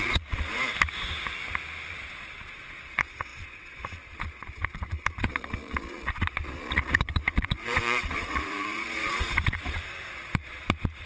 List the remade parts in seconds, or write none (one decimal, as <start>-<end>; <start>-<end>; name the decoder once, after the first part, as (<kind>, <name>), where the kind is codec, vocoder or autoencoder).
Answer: 0.0-0.6 (vocoder, Vocos); 1.9-11.1